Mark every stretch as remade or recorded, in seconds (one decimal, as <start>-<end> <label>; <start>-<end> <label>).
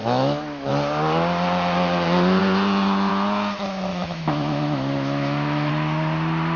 0.0-0.7 remade; 0.7-3.9 recorded; 3.9-5.7 remade; 5.7-6.6 recorded